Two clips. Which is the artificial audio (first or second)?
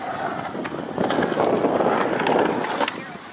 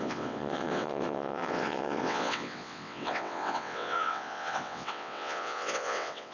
second